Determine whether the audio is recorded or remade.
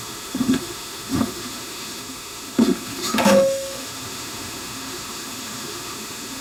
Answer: remade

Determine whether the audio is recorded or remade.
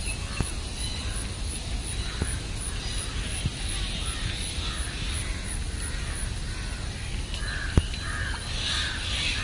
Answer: recorded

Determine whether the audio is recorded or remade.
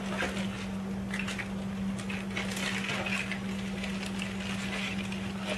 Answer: recorded